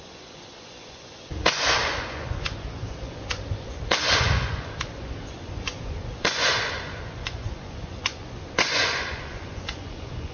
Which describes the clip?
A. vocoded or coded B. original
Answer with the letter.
A